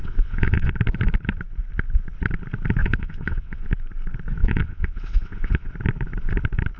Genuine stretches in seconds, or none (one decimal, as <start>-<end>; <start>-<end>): 0.7-2.8; 3.6-4.4; 5.7-6.8